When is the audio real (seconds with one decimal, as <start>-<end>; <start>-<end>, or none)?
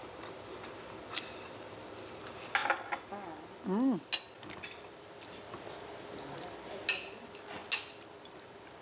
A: 0.0-8.8